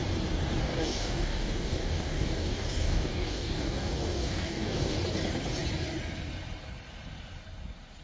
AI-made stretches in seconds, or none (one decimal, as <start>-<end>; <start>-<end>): 0.6-5.0